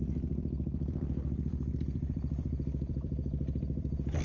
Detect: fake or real fake